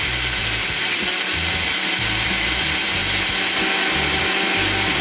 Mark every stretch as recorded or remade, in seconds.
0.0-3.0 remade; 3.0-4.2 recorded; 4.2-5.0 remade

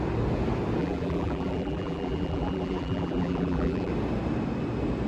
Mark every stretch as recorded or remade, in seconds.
0.0-0.8 recorded; 0.8-3.9 remade; 3.9-5.1 recorded

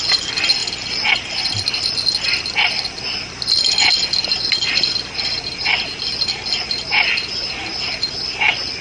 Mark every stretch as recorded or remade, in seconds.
0.0-8.8 recorded

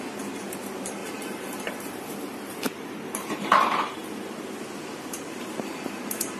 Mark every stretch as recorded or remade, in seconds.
0.0-4.0 remade; 4.0-5.1 recorded; 5.1-6.4 remade

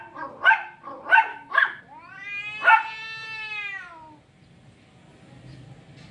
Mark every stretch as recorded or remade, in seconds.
0.0-1.3 recorded; 1.3-1.8 remade; 1.8-6.1 recorded

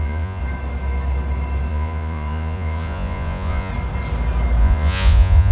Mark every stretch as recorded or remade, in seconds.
0.0-0.4 remade; 0.4-1.7 recorded; 1.7-3.7 remade; 3.7-4.6 recorded; 4.6-5.5 remade

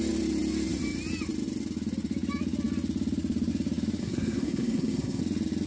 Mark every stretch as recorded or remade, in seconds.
0.0-4.0 recorded; 4.0-5.2 remade; 5.2-5.7 recorded

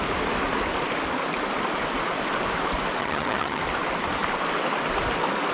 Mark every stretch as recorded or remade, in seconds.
0.0-3.0 recorded; 3.0-3.6 remade; 3.6-5.5 recorded